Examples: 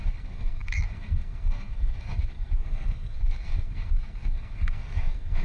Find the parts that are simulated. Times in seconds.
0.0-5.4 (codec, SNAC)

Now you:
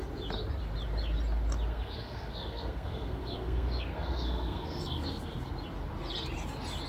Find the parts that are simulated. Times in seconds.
1.7-5.5 (codec, SNAC)

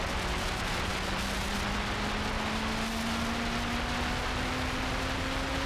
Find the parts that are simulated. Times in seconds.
none

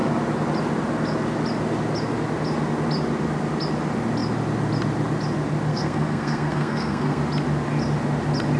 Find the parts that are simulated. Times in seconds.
5.7-7.2 (codec, SNAC)